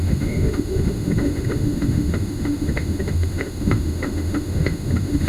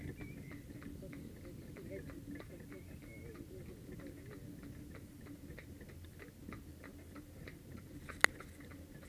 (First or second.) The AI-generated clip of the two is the first